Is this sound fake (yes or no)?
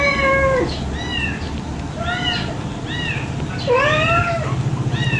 no